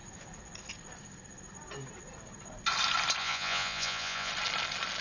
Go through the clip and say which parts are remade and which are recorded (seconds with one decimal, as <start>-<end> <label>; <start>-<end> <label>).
0.0-3.2 recorded; 3.2-4.3 remade; 4.3-5.0 recorded